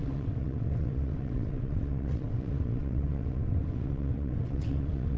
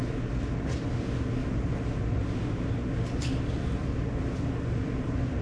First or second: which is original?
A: second